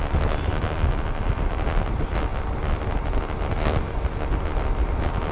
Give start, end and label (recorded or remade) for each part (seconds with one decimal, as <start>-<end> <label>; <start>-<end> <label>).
0.0-5.3 recorded